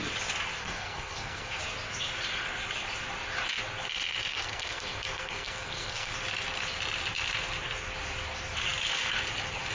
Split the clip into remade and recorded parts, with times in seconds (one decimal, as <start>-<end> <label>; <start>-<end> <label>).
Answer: 0.0-0.6 recorded; 0.6-1.6 remade; 1.6-4.3 recorded; 4.3-6.1 remade; 6.1-9.7 recorded

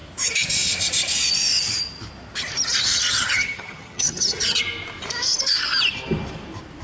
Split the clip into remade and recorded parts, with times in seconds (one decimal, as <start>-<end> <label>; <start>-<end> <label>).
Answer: 0.0-2.9 recorded; 2.9-4.6 remade; 4.6-6.8 recorded

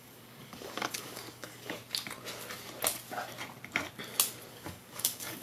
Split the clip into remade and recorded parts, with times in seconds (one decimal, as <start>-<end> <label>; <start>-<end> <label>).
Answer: 0.0-1.8 remade; 1.8-4.5 recorded; 4.5-5.4 remade

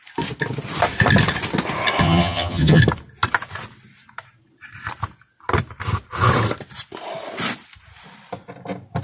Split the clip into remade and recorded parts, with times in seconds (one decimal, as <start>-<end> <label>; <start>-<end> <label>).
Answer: 0.0-2.0 recorded; 2.0-2.8 remade; 2.8-9.0 recorded

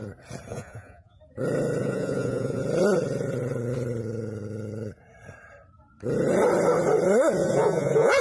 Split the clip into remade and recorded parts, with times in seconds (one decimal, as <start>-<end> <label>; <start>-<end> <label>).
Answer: 0.0-0.5 recorded; 0.5-1.2 remade; 1.2-1.8 recorded; 1.8-2.6 remade; 2.6-7.4 recorded; 7.4-8.2 remade

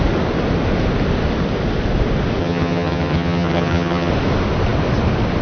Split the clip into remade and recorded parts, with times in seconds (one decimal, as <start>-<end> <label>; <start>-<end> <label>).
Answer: 0.0-2.4 recorded; 2.4-4.1 remade; 4.1-5.4 recorded

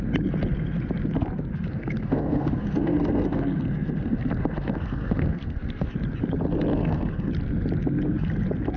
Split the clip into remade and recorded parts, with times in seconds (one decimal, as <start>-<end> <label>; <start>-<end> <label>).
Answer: 0.0-1.7 recorded; 1.7-5.9 remade; 5.9-6.7 recorded; 6.7-7.3 remade; 7.3-8.8 recorded

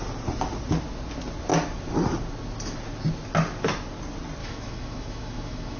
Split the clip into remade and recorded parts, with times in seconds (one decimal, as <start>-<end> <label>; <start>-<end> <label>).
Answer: 0.0-4.4 recorded; 4.4-5.8 remade